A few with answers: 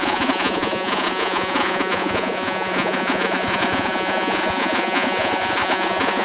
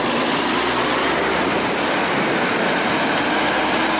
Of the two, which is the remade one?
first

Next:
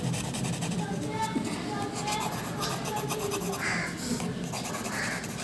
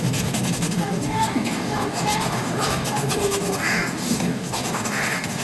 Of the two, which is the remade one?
second